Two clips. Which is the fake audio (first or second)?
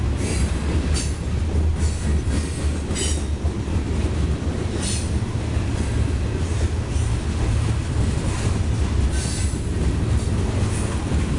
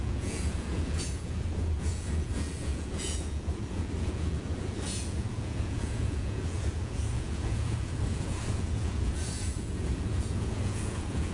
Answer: second